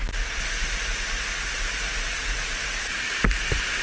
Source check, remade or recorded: recorded